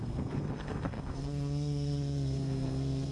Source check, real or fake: fake